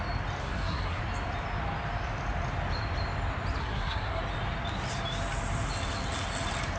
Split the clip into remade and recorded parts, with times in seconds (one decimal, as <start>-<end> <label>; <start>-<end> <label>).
0.0-0.4 recorded; 0.4-1.0 remade; 1.0-3.6 recorded; 3.6-4.2 remade; 4.2-6.8 recorded

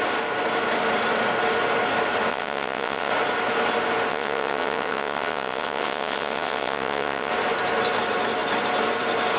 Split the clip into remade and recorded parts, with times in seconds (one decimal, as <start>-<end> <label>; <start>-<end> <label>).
0.0-2.3 recorded; 2.3-3.1 remade; 3.1-4.1 recorded; 4.1-7.3 remade; 7.3-9.4 recorded

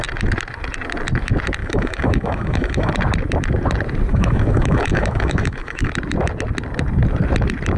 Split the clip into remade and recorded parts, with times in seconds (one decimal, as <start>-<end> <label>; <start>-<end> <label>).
0.0-1.6 recorded; 1.6-2.9 remade; 2.9-4.1 recorded; 4.1-5.9 remade; 5.9-7.8 recorded

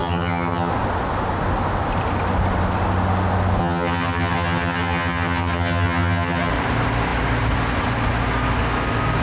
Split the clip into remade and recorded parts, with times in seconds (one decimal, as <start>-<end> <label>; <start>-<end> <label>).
0.0-0.7 remade; 0.7-3.6 recorded; 3.6-6.5 remade; 6.5-9.2 recorded